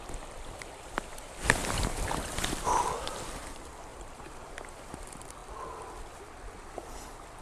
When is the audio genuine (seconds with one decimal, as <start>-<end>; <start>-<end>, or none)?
0.0-3.9; 4.5-7.4